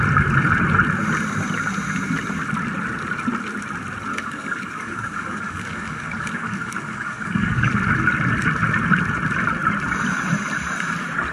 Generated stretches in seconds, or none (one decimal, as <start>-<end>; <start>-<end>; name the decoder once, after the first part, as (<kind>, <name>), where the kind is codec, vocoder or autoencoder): 4.1-7.7 (codec, DAC)